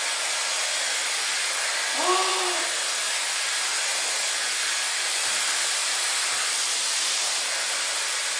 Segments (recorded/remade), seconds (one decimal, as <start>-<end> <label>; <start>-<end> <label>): 0.0-5.8 recorded; 5.8-7.8 remade; 7.8-8.4 recorded